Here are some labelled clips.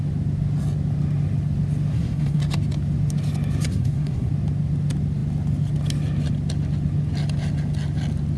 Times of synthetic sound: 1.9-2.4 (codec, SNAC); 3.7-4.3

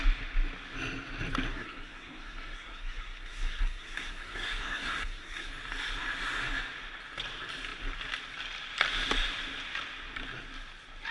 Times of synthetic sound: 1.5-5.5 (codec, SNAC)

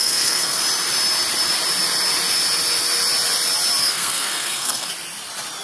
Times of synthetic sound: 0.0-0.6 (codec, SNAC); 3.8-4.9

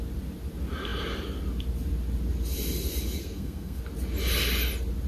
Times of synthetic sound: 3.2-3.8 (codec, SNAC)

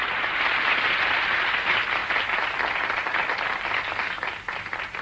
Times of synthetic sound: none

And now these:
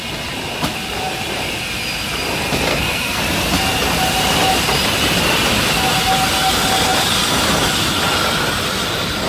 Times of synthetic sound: 2.7-3.2 (codec, SNAC)